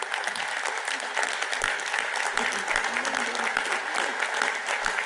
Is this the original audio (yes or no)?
yes